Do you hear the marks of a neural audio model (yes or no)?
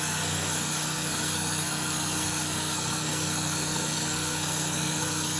yes